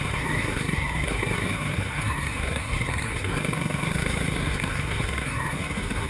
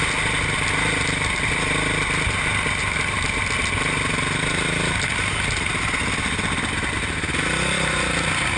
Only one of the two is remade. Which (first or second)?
first